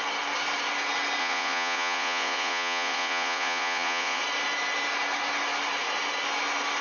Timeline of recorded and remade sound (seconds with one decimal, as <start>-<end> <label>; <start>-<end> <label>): 0.0-1.2 recorded; 1.2-4.2 remade; 4.2-6.8 recorded